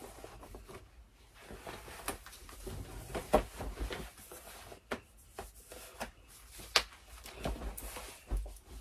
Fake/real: real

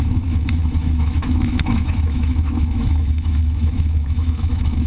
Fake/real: fake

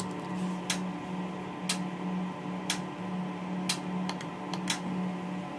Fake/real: real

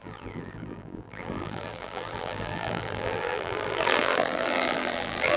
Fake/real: fake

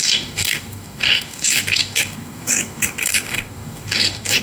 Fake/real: fake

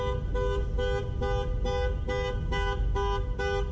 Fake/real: real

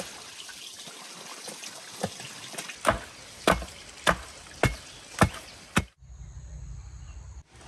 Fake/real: real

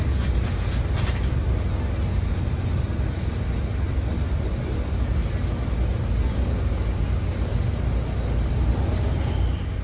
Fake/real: real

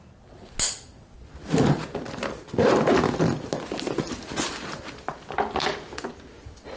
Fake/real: real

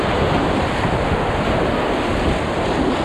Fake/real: real